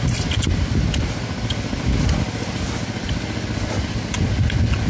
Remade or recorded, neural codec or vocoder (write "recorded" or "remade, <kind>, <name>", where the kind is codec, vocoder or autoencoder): recorded